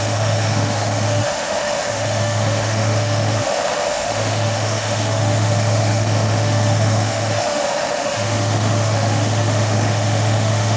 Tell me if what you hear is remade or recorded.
remade